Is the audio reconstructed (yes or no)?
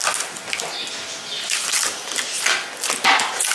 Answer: no